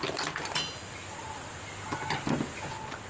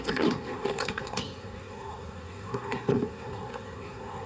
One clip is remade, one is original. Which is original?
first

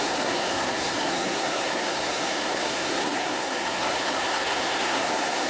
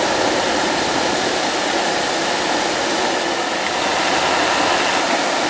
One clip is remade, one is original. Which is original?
second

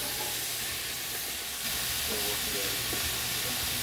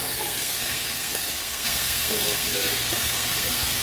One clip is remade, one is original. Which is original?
first